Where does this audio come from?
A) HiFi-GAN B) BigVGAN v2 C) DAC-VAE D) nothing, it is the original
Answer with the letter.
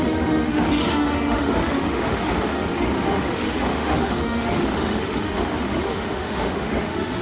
C